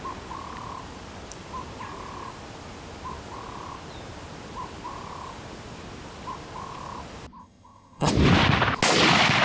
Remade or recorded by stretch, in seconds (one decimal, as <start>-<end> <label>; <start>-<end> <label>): 0.0-7.4 recorded; 7.4-8.1 remade; 8.1-9.4 recorded